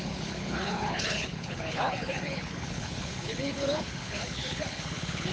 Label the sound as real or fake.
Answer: fake